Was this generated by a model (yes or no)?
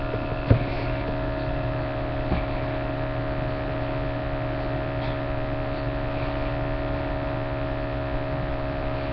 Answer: no